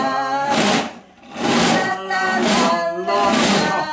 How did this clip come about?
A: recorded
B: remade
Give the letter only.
A